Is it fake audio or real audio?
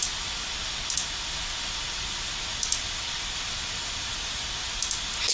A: real